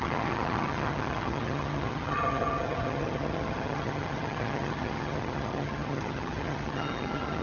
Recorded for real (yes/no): no